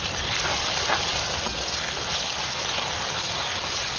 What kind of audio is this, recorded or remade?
recorded